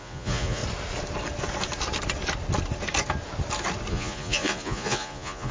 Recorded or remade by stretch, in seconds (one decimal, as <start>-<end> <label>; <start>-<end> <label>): 0.0-0.6 remade; 0.6-3.9 recorded; 3.9-5.5 remade